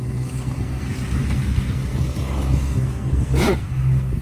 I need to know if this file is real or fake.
fake